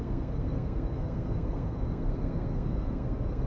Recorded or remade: remade